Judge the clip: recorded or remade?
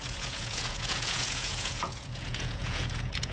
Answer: remade